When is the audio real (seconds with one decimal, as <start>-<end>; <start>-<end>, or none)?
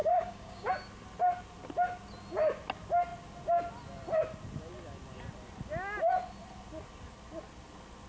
0.7-8.1